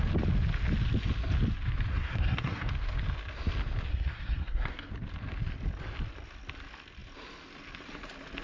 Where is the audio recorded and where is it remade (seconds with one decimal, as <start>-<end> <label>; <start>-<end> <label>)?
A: 0.0-1.9 recorded; 1.9-2.7 remade; 2.7-3.9 recorded; 3.9-4.9 remade; 4.9-8.4 recorded